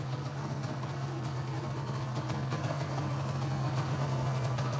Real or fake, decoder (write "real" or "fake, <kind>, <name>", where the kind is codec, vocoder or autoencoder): fake, codec, SNAC